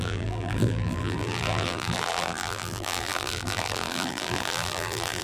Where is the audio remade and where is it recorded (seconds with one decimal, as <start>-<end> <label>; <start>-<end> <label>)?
0.0-5.2 remade